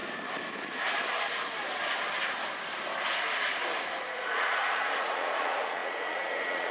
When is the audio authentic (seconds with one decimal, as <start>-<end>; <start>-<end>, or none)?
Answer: 0.0-4.0